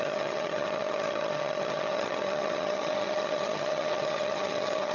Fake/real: fake